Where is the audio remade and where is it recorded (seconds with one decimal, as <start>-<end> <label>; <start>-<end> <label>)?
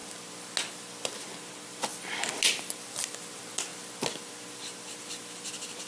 0.0-5.9 recorded